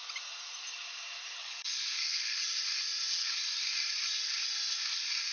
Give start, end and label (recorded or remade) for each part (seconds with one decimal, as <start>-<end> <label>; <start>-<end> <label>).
0.0-1.4 recorded; 1.4-2.4 remade; 2.4-5.3 recorded